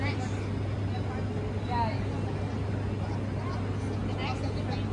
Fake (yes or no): no